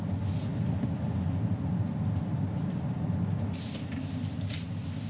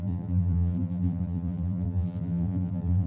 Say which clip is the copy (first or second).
second